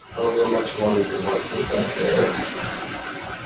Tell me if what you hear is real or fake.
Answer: fake